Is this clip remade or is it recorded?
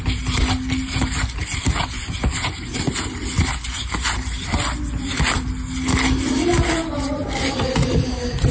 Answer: recorded